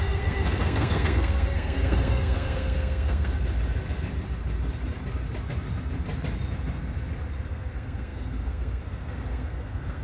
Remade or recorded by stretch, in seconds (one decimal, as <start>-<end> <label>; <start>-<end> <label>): 0.0-3.3 remade; 3.3-7.5 recorded; 7.5-10.0 remade